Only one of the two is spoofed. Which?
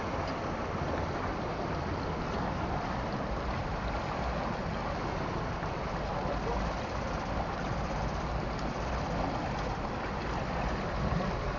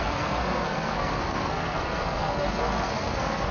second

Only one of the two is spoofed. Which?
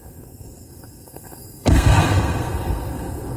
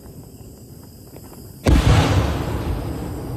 first